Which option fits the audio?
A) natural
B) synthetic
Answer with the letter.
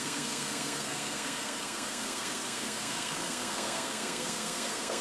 B